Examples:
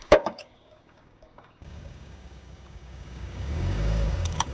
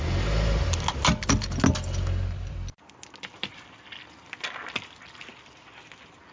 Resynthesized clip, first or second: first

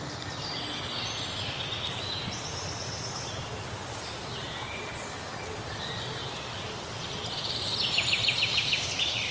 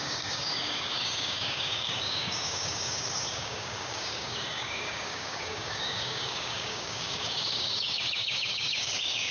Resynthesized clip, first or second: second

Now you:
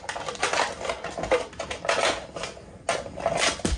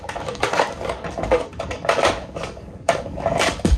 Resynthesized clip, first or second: second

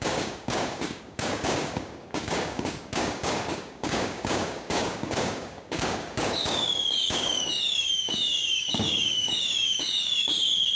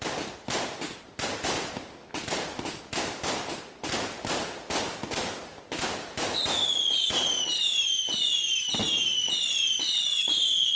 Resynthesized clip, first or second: first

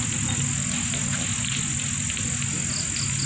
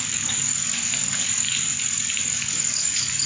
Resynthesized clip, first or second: second